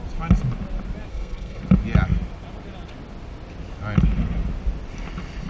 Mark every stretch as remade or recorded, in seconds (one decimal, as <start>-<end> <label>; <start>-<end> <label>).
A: 0.0-1.1 recorded; 1.1-1.6 remade; 1.6-5.5 recorded

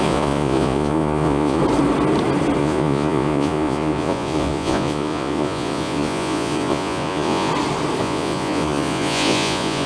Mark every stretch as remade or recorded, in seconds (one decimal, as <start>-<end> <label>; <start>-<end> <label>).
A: 0.0-1.6 remade; 1.6-2.6 recorded; 2.6-7.5 remade; 7.5-8.0 recorded; 8.0-9.9 remade

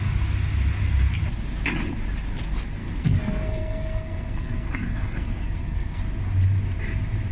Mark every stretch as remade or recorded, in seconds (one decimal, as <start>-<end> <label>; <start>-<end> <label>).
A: 0.0-2.8 recorded; 2.8-6.0 remade; 6.0-7.3 recorded

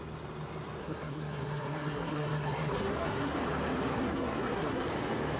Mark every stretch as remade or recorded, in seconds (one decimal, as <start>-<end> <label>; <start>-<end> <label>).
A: 0.0-0.8 recorded; 0.8-3.4 remade; 3.4-3.8 recorded; 3.8-4.9 remade; 4.9-5.4 recorded